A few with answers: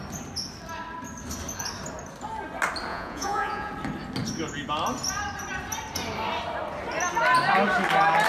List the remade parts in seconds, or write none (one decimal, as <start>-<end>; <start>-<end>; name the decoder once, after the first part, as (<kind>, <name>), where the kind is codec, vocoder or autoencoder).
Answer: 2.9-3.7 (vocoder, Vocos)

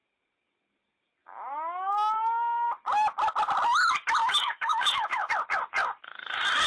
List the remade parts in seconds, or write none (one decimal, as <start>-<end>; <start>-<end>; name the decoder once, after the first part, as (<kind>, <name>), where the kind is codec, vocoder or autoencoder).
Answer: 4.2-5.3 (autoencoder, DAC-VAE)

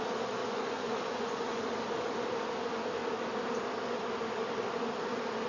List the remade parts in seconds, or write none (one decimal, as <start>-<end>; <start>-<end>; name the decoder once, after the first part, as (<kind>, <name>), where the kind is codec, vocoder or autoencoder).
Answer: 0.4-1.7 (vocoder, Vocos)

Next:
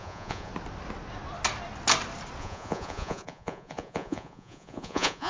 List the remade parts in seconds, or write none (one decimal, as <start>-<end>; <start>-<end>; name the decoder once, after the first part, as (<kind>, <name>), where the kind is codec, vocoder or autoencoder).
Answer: 0.0-0.5 (vocoder, Vocos); 2.4-5.3

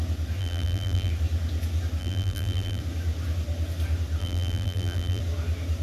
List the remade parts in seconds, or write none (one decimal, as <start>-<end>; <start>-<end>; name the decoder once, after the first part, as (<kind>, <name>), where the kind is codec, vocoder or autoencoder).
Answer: 0.4-1.1 (vocoder, BigVGAN v2); 2.0-2.8; 4.2-5.2

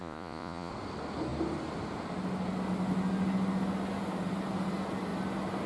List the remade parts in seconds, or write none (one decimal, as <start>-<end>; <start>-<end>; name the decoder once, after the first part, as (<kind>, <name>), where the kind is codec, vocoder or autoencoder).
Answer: 0.0-0.7 (vocoder, Vocos)